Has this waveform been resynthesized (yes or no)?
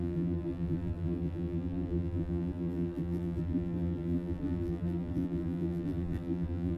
yes